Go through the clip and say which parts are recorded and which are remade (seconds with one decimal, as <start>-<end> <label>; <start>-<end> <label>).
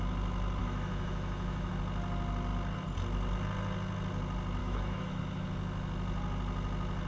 0.0-0.6 recorded; 0.6-1.7 remade; 1.7-4.6 recorded; 4.6-5.2 remade; 5.2-7.1 recorded